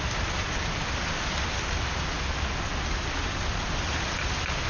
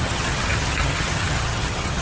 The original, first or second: first